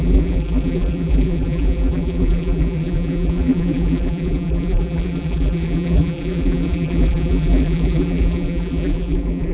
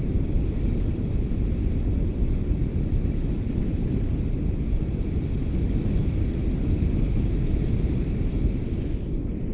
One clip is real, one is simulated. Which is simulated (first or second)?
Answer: first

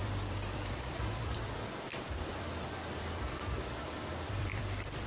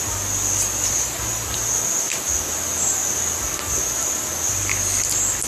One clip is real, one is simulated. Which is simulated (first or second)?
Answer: first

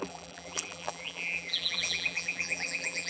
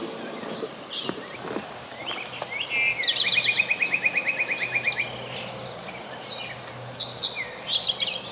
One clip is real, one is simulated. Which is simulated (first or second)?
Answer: first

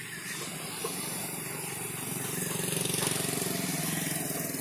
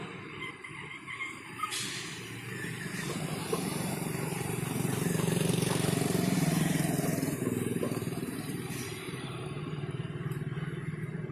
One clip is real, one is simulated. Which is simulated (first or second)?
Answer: second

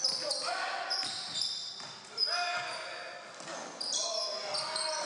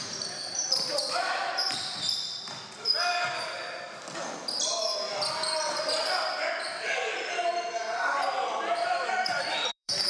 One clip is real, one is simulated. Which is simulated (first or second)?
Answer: second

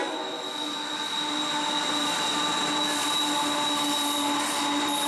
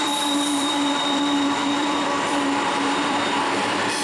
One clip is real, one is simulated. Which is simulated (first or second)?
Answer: second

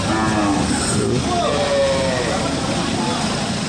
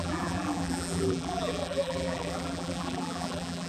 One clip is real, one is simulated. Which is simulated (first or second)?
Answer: second